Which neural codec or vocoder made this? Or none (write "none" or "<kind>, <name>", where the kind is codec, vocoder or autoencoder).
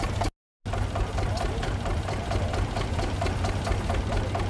none